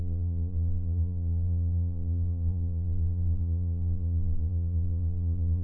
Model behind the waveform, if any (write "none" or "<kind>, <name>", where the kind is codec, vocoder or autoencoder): vocoder, Vocos